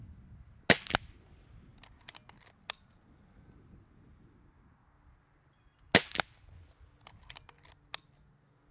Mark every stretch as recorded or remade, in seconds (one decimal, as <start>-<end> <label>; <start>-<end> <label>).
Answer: 0.0-8.7 recorded